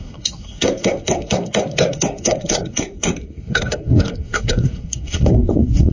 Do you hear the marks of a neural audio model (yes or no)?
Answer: yes